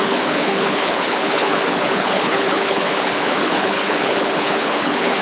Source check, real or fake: fake